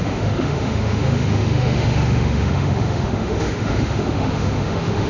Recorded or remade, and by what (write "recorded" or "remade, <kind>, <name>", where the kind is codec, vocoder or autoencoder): remade, autoencoder, DAC-VAE